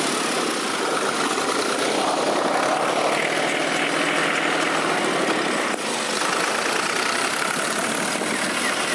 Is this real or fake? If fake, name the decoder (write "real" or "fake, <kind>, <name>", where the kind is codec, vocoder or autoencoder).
real